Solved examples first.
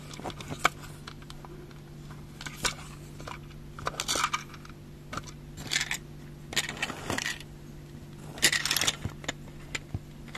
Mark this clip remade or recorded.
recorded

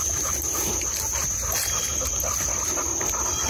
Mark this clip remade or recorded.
recorded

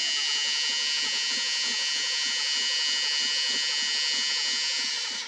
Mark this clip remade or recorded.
recorded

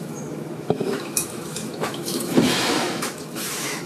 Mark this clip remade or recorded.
remade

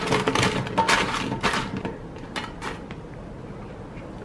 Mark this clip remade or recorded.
recorded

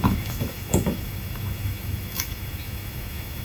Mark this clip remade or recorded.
remade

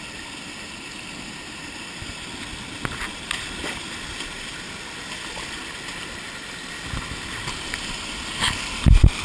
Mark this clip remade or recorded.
recorded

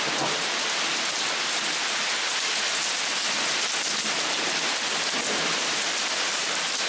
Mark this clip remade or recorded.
recorded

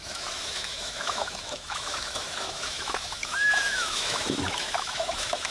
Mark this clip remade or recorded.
remade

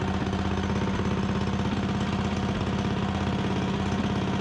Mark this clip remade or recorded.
recorded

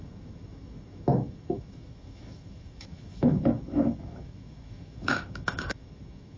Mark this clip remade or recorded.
remade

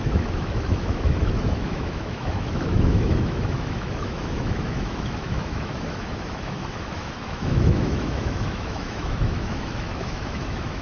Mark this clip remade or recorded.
remade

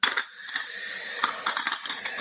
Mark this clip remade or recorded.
recorded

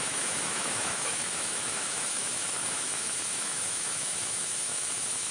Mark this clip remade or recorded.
remade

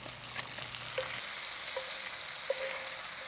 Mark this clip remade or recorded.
recorded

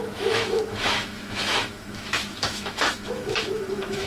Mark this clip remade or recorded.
remade